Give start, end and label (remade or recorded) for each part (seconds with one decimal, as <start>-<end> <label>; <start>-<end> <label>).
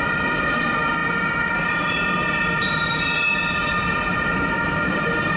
0.0-5.4 recorded